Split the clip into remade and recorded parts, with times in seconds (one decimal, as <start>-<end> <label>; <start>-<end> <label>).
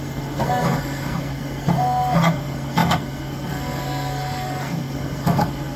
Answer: 0.0-5.8 remade